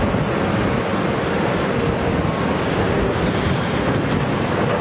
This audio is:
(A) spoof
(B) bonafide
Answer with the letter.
B